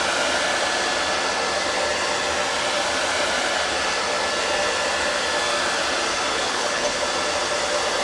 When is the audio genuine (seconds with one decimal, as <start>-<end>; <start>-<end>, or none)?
0.0-6.3; 7.0-8.0